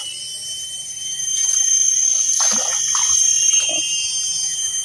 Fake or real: real